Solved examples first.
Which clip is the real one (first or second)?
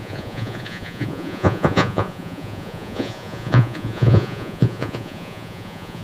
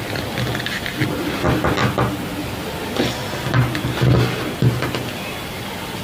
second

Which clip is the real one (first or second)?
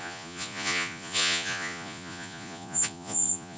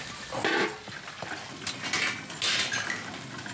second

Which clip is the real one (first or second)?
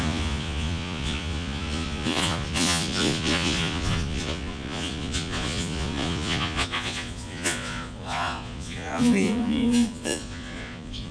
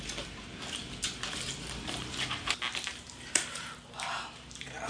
second